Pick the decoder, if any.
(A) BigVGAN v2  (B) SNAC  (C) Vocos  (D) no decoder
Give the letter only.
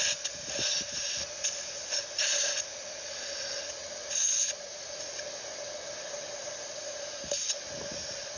D